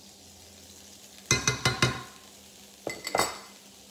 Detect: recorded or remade recorded